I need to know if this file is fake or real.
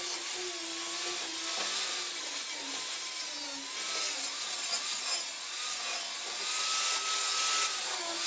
real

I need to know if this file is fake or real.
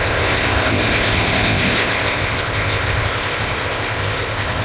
fake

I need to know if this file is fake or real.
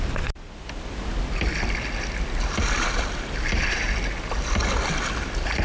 real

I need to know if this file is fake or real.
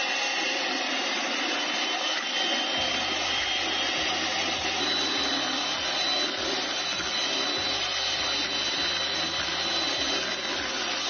real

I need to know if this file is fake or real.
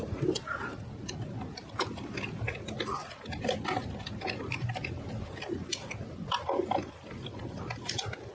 real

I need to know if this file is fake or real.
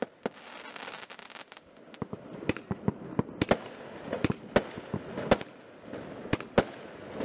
real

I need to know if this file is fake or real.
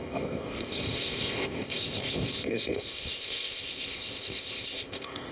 fake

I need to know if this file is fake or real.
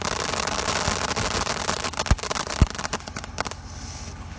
real